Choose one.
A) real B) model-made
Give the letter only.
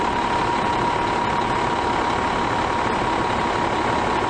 A